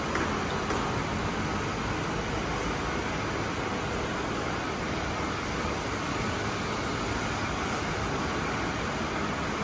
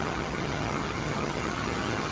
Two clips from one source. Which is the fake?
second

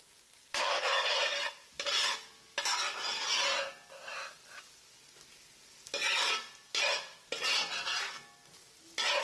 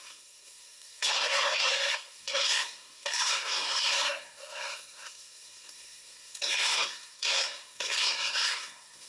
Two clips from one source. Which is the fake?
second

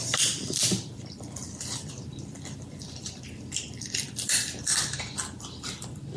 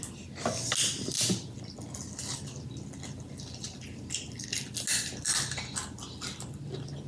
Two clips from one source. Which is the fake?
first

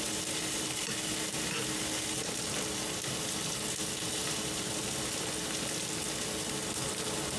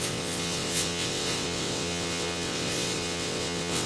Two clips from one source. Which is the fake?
second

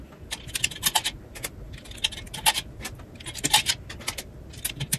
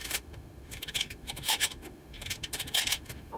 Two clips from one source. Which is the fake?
second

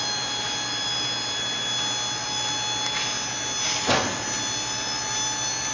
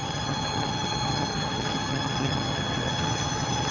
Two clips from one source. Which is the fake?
second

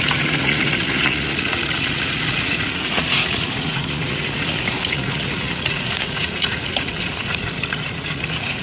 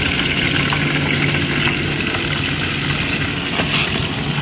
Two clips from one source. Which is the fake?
first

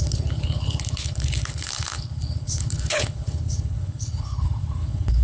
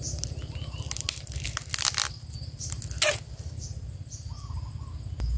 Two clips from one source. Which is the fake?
first